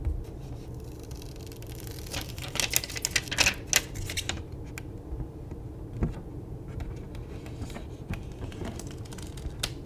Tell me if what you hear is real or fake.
real